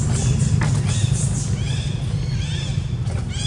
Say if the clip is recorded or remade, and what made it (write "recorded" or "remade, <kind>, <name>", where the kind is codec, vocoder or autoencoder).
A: recorded